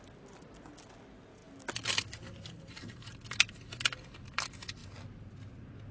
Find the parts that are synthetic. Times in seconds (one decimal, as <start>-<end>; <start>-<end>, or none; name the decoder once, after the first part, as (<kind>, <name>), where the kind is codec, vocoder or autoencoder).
none